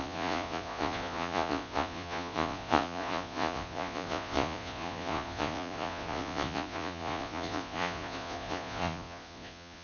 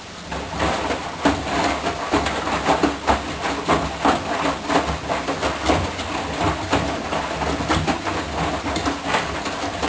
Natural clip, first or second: second